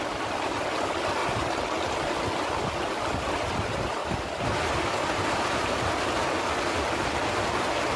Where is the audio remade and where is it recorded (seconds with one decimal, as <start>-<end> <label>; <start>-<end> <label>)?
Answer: 0.0-4.0 recorded; 4.0-5.9 remade; 5.9-8.0 recorded